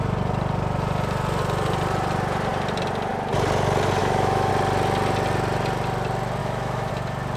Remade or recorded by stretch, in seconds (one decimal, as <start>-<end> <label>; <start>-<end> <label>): 0.0-4.0 recorded; 4.0-4.5 remade; 4.5-6.4 recorded; 6.4-6.9 remade; 6.9-7.4 recorded